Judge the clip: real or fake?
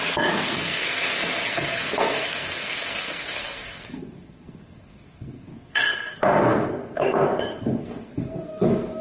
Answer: fake